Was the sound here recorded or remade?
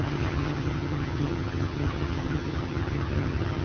remade